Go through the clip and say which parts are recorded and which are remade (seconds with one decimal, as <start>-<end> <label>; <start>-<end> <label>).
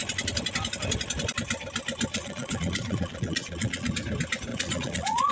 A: 0.0-2.1 recorded; 2.1-3.9 remade; 3.9-4.5 recorded; 4.5-5.3 remade